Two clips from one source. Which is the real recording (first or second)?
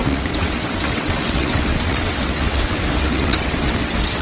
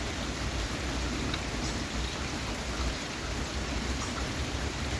second